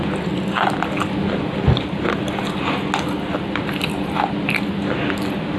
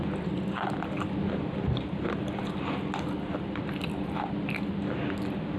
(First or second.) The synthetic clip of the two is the second